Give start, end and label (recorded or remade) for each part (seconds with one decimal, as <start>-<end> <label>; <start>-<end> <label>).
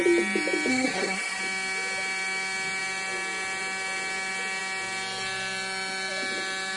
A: 0.0-0.7 recorded; 0.7-1.4 remade; 1.4-6.8 recorded